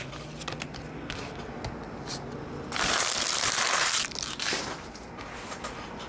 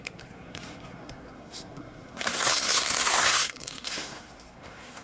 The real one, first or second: first